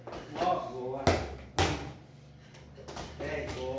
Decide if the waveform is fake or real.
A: real